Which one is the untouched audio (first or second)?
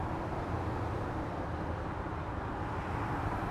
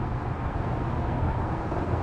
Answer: first